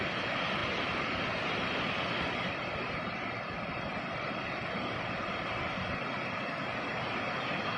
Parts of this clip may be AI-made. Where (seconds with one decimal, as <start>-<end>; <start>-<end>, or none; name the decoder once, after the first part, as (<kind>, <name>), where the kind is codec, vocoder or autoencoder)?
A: none